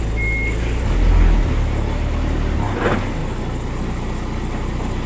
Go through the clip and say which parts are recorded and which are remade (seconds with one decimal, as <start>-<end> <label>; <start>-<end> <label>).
0.0-5.1 recorded